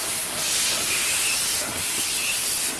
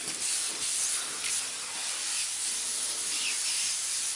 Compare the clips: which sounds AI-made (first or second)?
second